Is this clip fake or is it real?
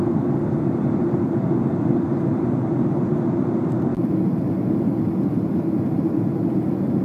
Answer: real